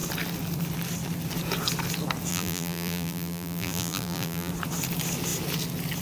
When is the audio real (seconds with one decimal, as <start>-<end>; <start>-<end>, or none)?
0.0-2.3; 4.5-6.0